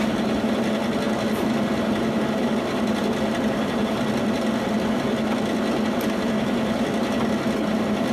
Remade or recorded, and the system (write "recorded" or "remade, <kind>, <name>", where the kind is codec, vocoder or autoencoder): recorded